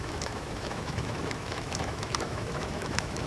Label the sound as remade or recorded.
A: remade